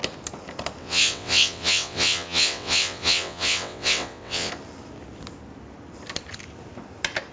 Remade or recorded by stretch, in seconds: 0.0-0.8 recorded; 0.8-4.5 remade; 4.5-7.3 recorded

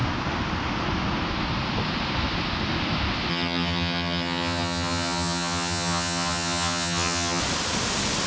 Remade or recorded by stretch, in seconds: 0.0-3.3 recorded; 3.3-7.4 remade; 7.4-8.3 recorded

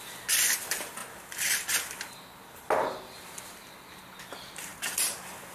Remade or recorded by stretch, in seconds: 0.0-5.5 recorded

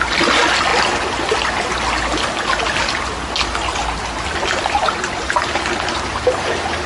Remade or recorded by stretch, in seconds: 0.0-6.9 recorded

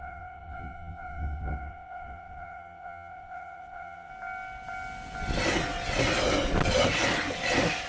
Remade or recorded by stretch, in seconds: 0.0-4.1 remade; 4.1-7.9 recorded

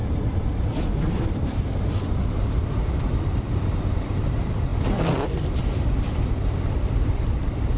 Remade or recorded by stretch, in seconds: 0.0-4.7 remade; 4.7-5.6 recorded; 5.6-7.8 remade